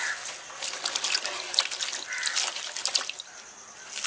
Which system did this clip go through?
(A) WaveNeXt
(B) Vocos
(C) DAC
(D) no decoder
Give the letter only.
D